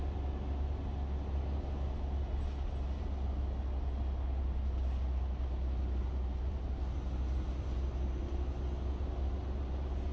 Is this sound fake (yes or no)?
no